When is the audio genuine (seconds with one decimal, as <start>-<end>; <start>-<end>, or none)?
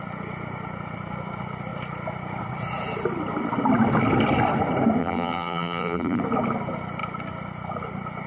0.0-5.0; 6.2-8.3